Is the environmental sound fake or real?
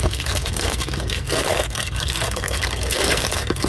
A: fake